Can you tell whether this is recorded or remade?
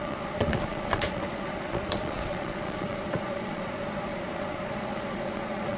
remade